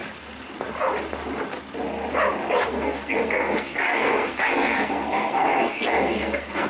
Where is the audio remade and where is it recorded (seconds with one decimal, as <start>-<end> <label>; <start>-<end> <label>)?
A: 0.0-2.7 recorded; 2.7-6.7 remade